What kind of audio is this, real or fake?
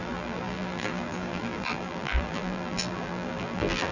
fake